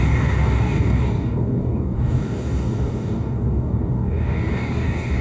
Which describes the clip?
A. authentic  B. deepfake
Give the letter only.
B